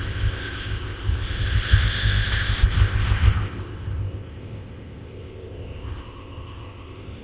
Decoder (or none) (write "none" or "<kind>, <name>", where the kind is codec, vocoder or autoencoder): codec, ZipCodec